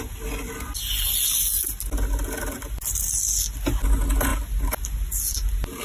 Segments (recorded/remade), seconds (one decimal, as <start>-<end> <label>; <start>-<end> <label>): 0.0-5.8 recorded